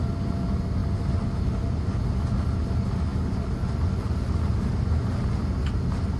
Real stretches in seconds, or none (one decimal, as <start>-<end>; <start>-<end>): 0.0-6.2